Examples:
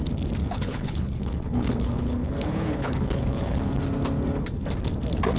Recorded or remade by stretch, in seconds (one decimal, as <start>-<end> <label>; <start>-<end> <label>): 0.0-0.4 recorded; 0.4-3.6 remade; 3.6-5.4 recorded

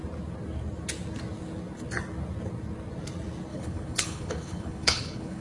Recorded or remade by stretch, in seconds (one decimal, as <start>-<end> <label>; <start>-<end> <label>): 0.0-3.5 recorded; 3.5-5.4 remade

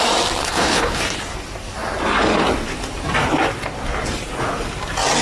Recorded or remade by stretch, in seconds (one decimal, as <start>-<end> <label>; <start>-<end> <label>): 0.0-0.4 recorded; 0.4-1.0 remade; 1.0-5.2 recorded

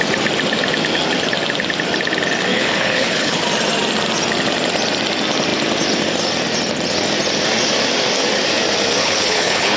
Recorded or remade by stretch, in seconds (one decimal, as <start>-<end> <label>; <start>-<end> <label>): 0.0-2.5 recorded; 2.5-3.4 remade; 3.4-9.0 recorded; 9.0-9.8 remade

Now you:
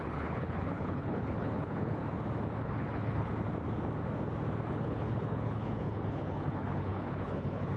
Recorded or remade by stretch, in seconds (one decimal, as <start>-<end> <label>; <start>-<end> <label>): 0.0-2.0 remade; 2.0-2.6 recorded; 2.6-3.3 remade; 3.3-4.7 recorded; 4.7-7.8 remade

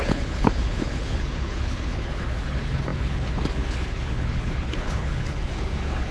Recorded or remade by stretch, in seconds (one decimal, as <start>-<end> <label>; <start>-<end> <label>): 0.0-6.1 remade

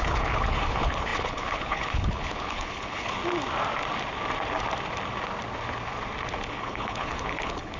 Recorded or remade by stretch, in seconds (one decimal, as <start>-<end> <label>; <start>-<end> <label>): 0.0-3.2 remade; 3.2-6.5 recorded; 6.5-7.8 remade

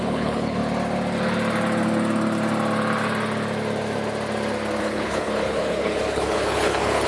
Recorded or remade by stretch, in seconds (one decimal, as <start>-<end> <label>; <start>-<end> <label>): 0.0-0.6 remade; 0.6-4.8 recorded; 4.8-7.1 remade